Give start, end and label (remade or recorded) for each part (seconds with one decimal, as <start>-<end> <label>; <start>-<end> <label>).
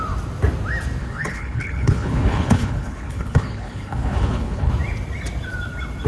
0.0-1.0 recorded; 1.0-4.7 remade; 4.7-6.1 recorded